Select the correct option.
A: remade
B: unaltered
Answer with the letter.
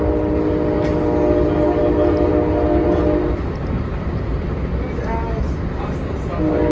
B